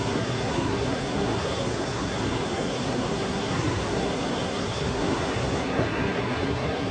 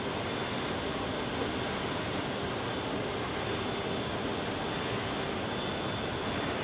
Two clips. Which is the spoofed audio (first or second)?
first